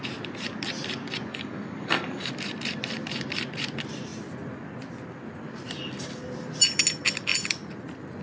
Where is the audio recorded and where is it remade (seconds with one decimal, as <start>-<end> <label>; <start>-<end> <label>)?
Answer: 0.0-1.3 recorded; 1.3-2.3 remade; 2.3-8.2 recorded